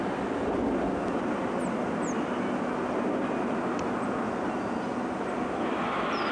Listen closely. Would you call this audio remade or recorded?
recorded